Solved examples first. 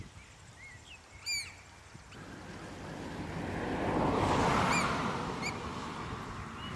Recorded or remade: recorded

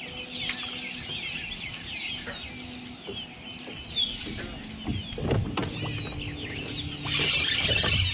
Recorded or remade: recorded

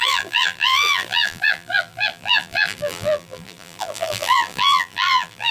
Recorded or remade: remade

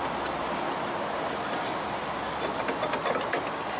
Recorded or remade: recorded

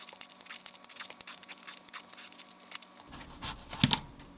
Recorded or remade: recorded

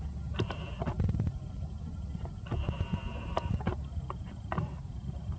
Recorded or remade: recorded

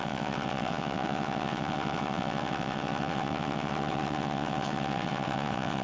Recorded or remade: remade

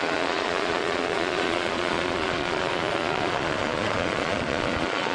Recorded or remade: remade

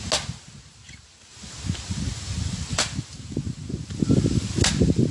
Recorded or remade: recorded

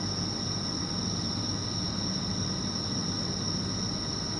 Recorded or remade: recorded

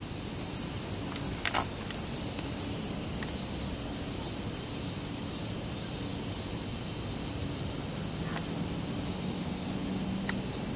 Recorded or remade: recorded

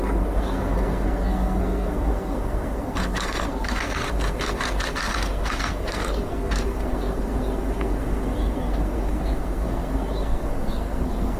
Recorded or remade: remade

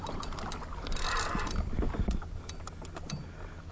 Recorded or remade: recorded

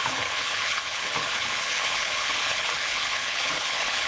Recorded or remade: remade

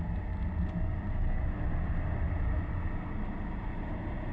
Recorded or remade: recorded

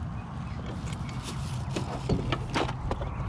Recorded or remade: recorded